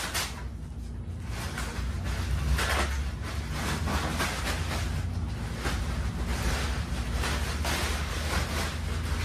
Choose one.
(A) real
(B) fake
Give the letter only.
A